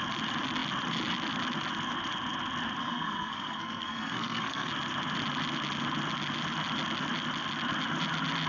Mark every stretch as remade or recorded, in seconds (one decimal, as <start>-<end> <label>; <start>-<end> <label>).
0.0-2.8 recorded; 2.8-4.7 remade; 4.7-8.5 recorded